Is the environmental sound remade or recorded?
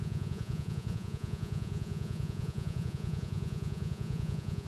remade